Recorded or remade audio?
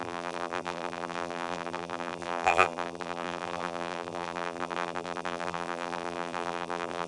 remade